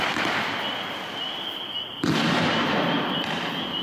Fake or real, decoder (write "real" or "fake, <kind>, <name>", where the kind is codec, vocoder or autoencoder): real